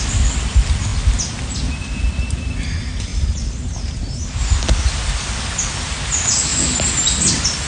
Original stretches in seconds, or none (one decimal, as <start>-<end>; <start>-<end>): 0.0-3.1; 4.6-6.5; 7.3-7.7